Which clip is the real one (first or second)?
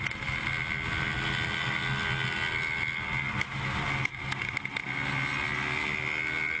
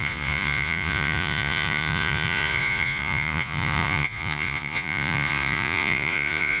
first